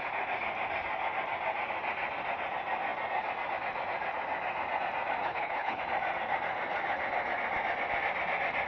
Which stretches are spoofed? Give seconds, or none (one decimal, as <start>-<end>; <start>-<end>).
5.2-5.8